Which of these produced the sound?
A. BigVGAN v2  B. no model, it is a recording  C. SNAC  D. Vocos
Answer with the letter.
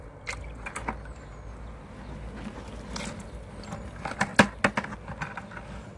B